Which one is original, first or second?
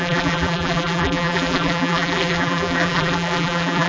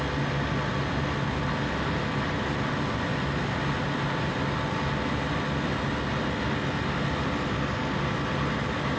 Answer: second